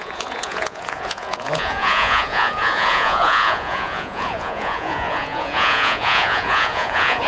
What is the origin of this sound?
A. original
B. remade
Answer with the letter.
B